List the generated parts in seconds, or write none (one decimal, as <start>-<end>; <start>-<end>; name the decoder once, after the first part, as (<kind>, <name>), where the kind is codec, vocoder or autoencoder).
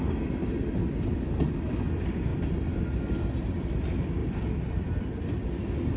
4.2-5.5 (vocoder, BigVGAN v2)